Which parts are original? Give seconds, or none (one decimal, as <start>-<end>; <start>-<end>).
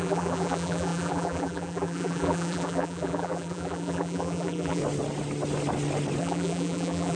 4.8-6.2